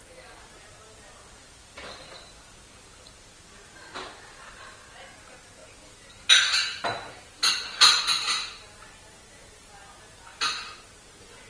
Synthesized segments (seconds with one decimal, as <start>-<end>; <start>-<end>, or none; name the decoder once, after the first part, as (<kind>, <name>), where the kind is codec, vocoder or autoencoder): 1.4-4.7 (vocoder, BigVGAN v2); 10.3-10.8